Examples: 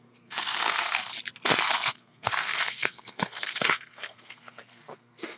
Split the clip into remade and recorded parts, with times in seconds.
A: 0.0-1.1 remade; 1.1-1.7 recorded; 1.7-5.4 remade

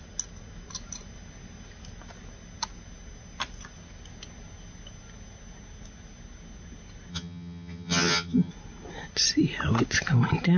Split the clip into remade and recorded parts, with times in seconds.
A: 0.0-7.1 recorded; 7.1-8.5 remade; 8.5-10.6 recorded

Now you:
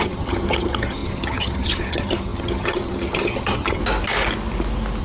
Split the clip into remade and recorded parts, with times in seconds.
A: 0.0-3.8 remade; 3.8-5.0 recorded